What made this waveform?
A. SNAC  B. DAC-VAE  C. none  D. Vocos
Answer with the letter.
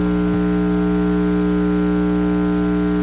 C